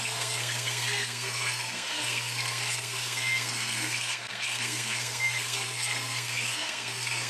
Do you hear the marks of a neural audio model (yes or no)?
yes